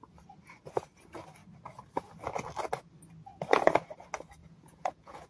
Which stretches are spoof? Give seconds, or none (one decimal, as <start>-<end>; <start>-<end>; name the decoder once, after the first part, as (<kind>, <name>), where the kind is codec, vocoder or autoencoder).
4.4-5.3 (vocoder, Vocos)